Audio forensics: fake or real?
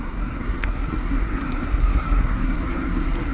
fake